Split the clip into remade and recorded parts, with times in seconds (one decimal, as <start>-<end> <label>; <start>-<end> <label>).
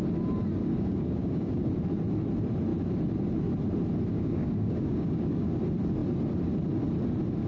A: 0.0-0.6 recorded; 0.6-1.7 remade; 1.7-4.1 recorded; 4.1-5.6 remade; 5.6-7.5 recorded